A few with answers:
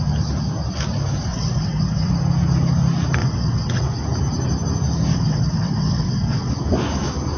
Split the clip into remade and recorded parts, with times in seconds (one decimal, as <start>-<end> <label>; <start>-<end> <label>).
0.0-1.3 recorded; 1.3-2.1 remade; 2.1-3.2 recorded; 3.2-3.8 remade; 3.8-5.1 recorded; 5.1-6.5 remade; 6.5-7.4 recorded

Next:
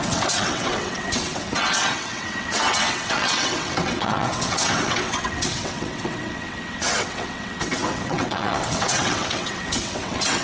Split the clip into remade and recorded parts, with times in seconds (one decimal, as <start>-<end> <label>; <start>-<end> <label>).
0.0-10.4 remade

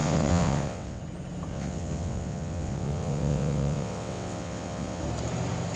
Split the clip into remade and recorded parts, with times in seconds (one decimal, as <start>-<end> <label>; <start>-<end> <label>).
0.0-1.0 remade; 1.0-1.5 recorded; 1.5-5.0 remade; 5.0-5.8 recorded